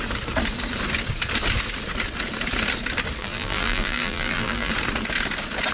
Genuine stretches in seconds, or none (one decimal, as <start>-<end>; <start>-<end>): 0.0-3.2; 4.7-5.7